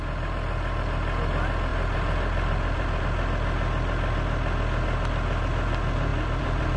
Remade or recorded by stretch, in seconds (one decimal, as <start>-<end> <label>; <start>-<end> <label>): 0.0-1.7 recorded; 1.7-3.0 remade; 3.0-6.1 recorded; 6.1-6.8 remade